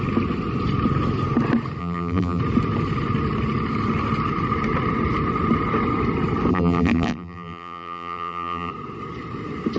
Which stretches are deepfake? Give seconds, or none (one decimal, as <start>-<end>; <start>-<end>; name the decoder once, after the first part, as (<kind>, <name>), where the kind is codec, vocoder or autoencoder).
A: 1.8-2.4 (vocoder, BigVGAN v2); 6.5-8.7